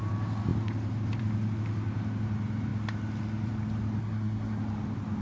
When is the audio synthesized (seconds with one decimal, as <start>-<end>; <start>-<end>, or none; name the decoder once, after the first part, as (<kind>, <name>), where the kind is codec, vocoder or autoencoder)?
4.0-4.6 (codec, SNAC)